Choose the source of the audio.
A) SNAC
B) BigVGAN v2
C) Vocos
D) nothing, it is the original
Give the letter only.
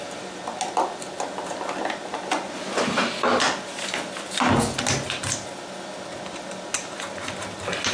D